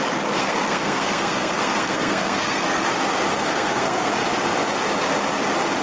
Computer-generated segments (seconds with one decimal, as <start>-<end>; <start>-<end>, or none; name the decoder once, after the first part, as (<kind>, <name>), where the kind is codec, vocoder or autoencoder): 0.4-2.6 (codec, SNAC); 3.3-4.1